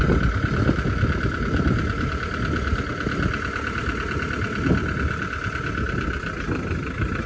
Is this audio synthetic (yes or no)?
no